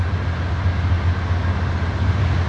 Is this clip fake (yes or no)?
no